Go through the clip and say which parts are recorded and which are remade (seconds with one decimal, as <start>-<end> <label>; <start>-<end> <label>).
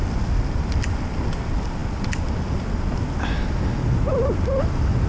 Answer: 0.0-5.1 recorded